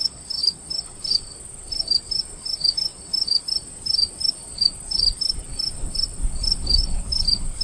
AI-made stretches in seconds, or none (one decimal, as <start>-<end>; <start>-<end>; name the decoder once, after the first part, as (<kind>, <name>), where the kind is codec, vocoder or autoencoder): 0.4-2.0 (vocoder, BigVGAN v2); 2.9-6.8